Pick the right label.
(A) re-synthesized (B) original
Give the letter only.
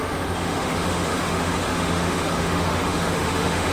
A